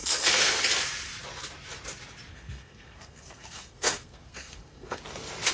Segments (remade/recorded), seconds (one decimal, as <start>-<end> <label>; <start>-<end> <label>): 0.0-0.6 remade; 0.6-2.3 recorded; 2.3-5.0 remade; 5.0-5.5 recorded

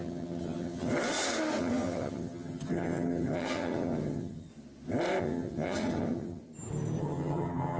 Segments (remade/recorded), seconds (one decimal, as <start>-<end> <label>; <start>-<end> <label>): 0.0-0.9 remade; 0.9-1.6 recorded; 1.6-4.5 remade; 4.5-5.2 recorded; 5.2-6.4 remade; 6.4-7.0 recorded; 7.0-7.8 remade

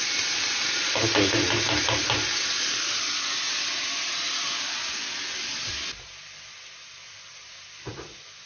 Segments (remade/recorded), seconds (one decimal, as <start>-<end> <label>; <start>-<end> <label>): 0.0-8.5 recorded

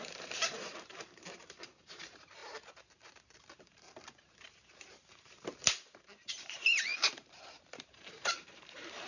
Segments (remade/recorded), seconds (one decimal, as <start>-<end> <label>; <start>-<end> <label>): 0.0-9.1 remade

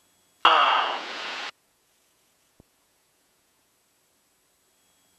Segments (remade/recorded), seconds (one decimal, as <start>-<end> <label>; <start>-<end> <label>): 0.0-0.6 recorded; 0.6-3.7 remade; 3.7-5.2 recorded

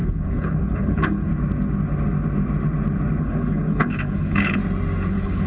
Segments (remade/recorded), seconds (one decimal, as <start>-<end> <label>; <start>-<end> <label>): 0.0-1.3 remade; 1.3-3.2 recorded; 3.2-4.6 remade; 4.6-5.1 recorded; 5.1-5.5 remade

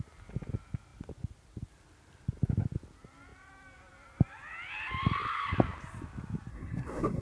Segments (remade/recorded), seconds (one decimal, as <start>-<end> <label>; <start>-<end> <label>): 0.0-6.5 recorded; 6.5-7.2 remade